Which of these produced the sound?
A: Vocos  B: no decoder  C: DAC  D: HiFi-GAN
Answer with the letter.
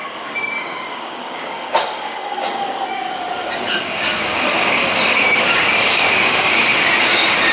C